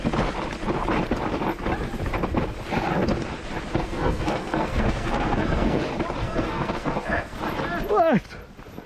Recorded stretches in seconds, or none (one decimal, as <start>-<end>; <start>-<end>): 0.0-3.7; 5.8-6.2; 7.4-8.9